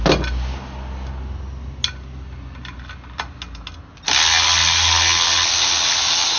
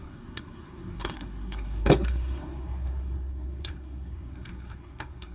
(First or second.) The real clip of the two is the first